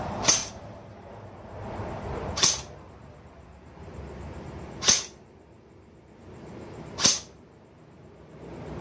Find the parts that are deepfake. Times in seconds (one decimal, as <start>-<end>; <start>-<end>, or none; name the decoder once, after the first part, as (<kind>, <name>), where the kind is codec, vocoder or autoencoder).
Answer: 0.4-1.1 (vocoder, BigVGAN v2)